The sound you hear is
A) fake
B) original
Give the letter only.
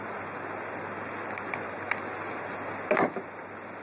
B